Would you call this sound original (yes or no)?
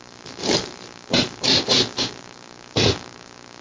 no